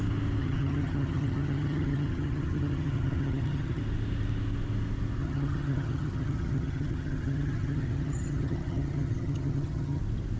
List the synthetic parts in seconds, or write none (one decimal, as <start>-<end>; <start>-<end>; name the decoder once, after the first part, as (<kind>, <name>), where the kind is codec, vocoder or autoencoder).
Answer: 0.4-3.8 (vocoder, HiFi-GAN); 5.2-10.0

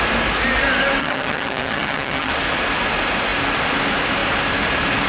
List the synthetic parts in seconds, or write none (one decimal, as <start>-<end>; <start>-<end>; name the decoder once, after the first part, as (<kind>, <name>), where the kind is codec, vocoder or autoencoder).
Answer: 1.0-2.3 (vocoder, HiFi-GAN)

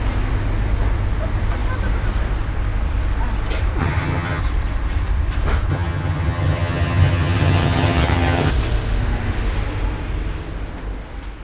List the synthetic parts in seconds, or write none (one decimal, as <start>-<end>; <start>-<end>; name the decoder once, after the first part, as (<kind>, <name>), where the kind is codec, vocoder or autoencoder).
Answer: 3.8-4.4 (vocoder, HiFi-GAN); 5.7-8.5

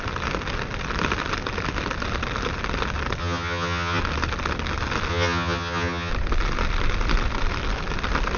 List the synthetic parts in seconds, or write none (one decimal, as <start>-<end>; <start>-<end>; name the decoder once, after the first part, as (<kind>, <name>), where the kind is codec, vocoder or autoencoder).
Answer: 3.2-4.0 (vocoder, HiFi-GAN); 5.1-6.1